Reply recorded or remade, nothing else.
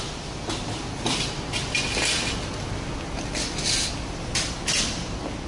recorded